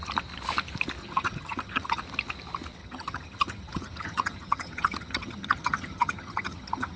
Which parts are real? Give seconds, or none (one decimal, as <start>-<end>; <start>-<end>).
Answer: 0.0-1.0; 2.0-2.8